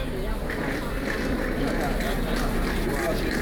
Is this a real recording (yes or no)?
yes